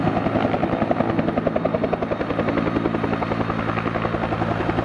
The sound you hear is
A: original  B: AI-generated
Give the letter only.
A